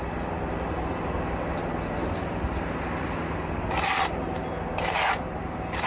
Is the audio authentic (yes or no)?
yes